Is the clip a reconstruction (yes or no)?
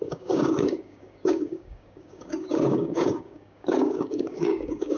yes